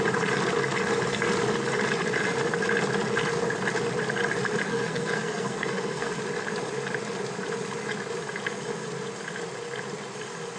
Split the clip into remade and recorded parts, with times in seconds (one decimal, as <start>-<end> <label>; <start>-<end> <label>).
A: 0.0-4.7 recorded; 4.7-6.2 remade; 6.2-10.6 recorded